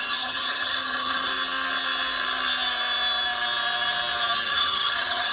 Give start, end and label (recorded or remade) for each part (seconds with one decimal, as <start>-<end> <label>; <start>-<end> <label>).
0.0-1.3 remade; 1.3-4.5 recorded; 4.5-5.3 remade